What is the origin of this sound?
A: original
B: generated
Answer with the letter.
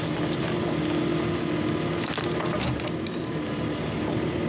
A